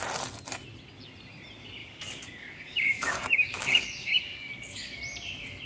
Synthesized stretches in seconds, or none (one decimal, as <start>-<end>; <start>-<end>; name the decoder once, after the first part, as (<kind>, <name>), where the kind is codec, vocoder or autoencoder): 1.8-5.0 (codec, DAC)